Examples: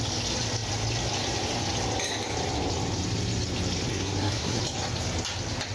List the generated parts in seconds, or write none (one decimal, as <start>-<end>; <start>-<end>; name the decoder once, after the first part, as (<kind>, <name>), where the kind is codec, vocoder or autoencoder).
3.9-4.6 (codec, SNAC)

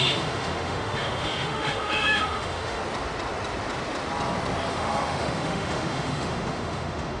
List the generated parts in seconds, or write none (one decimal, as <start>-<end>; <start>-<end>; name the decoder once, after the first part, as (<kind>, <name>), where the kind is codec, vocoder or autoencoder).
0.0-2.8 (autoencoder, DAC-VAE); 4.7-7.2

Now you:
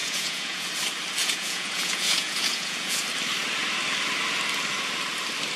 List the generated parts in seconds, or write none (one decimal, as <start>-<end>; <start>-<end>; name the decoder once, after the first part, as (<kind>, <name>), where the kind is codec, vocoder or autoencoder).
0.0-0.7 (vocoder, Vocos); 1.2-3.0

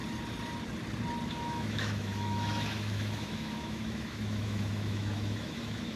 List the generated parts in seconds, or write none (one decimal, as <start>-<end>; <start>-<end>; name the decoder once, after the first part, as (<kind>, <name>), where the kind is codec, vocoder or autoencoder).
1.3-6.0 (autoencoder, DAC-VAE)

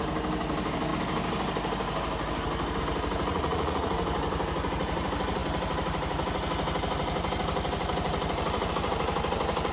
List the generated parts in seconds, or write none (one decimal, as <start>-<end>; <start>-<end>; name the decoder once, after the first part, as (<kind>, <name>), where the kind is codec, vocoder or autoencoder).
3.3-3.9 (vocoder, Vocos)

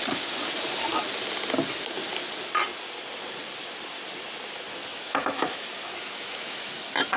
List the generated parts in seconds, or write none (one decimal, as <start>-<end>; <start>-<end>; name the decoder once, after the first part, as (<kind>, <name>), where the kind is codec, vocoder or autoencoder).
4.9-6.7 (autoencoder, DAC-VAE)

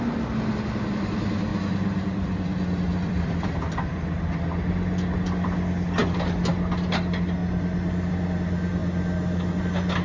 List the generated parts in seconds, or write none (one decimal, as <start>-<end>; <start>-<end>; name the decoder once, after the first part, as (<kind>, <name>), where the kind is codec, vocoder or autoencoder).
1.5-3.3 (vocoder, BigVGAN v2)